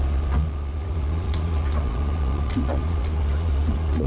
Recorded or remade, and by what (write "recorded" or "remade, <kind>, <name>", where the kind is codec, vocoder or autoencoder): remade, vocoder, Vocos